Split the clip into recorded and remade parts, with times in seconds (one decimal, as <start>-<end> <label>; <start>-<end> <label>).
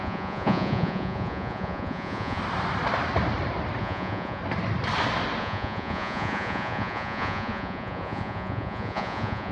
0.0-2.4 remade; 2.4-3.8 recorded; 3.8-4.4 remade; 4.4-5.4 recorded; 5.4-9.5 remade